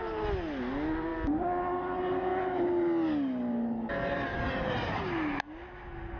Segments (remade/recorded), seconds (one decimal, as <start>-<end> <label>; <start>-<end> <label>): 0.0-4.3 recorded; 4.3-5.0 remade; 5.0-6.2 recorded

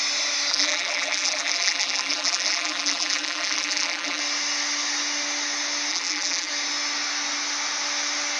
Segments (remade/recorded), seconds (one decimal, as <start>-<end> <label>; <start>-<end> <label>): 0.0-0.5 recorded; 0.5-4.2 remade; 4.2-5.9 recorded; 5.9-6.5 remade; 6.5-8.4 recorded

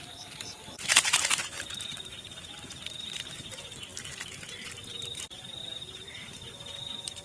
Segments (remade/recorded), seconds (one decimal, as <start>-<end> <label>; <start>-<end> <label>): 0.0-7.2 remade

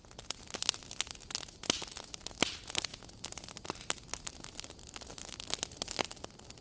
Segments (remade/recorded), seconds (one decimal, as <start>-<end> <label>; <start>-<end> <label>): 0.0-6.6 recorded